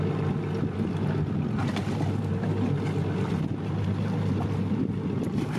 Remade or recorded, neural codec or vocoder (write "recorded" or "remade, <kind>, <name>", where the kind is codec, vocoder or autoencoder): recorded